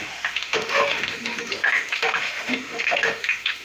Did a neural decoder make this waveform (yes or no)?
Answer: yes